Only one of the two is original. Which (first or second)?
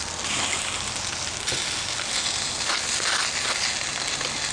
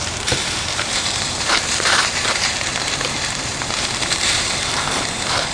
first